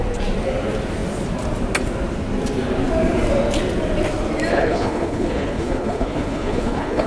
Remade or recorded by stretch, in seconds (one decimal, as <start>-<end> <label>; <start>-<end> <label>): 0.0-4.5 recorded; 4.5-7.1 remade

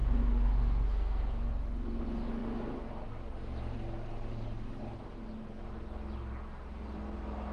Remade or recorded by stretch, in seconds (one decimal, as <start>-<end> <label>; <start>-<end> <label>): 0.0-1.5 remade; 1.5-7.5 recorded

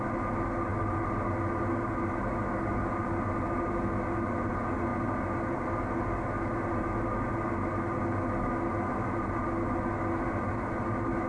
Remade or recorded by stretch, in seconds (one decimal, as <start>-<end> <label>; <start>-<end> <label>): 0.0-11.3 recorded

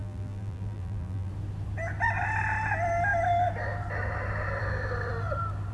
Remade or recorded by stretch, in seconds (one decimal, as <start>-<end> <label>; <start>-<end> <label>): 0.0-1.3 remade; 1.3-5.7 recorded